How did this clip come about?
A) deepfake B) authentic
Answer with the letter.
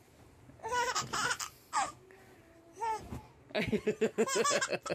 B